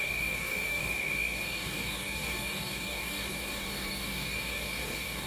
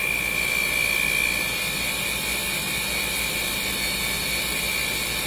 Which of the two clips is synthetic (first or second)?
first